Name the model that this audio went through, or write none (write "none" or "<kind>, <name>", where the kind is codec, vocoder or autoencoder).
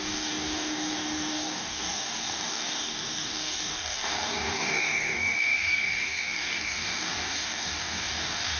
codec, DAC